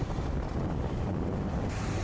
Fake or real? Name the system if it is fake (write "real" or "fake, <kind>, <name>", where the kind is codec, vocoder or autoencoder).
real